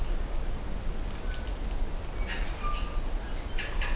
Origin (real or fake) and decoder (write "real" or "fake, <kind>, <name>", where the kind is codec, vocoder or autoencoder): real